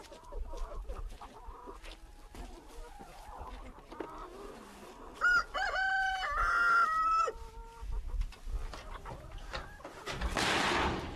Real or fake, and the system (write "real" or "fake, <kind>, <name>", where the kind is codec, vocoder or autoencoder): real